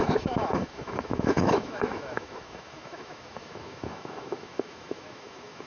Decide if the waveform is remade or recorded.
remade